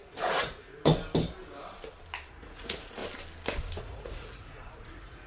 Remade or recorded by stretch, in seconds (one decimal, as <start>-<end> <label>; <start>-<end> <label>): 0.0-0.9 remade; 0.9-2.3 recorded; 2.3-3.0 remade; 3.0-3.8 recorded; 3.8-5.3 remade